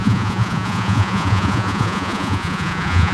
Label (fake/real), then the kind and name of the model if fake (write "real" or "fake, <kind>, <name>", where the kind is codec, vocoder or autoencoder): fake, vocoder, Vocos